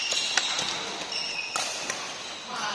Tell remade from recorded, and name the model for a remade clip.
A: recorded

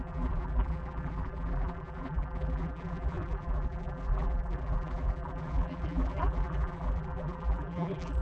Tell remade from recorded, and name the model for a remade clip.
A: remade, vocoder, BigVGAN v2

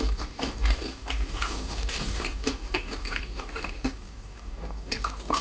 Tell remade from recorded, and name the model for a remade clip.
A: remade, codec, DAC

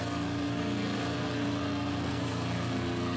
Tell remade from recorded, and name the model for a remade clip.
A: remade, codec, SNAC